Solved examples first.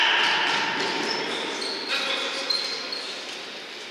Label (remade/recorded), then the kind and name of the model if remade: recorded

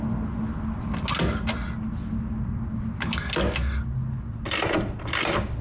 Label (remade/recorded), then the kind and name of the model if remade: recorded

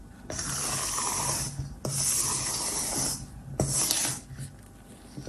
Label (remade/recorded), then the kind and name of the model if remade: recorded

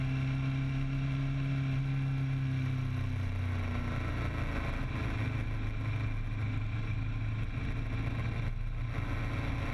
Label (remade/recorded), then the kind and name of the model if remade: recorded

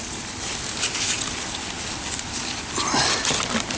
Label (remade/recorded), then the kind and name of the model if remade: recorded